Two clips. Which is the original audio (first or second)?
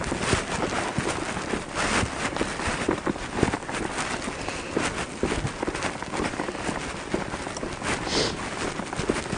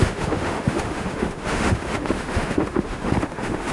first